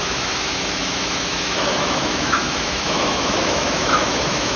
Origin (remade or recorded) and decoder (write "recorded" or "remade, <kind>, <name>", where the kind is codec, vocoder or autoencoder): remade, autoencoder, DAC-VAE